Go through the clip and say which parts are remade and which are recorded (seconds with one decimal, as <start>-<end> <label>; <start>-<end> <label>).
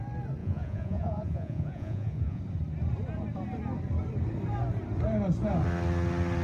0.0-0.4 recorded; 0.4-2.4 remade; 2.4-6.4 recorded